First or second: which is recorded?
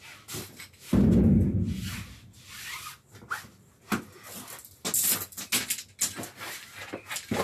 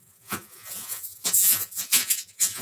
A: first